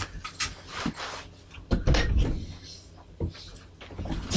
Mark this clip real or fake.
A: real